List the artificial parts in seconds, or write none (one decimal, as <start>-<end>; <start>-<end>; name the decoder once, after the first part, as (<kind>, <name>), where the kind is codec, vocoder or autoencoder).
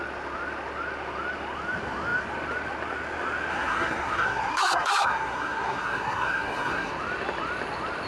3.5-6.9 (codec, SNAC)